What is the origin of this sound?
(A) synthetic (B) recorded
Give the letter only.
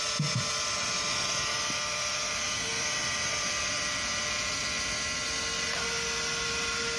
B